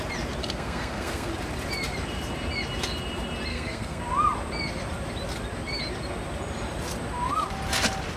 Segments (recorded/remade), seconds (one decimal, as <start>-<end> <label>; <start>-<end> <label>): 0.0-0.4 recorded; 0.4-1.3 remade; 1.3-3.5 recorded; 3.5-4.0 remade; 4.0-8.2 recorded